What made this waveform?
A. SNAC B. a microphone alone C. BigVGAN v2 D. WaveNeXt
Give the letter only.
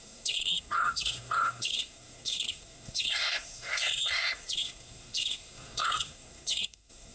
A